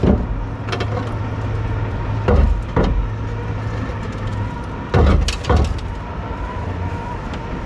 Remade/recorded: recorded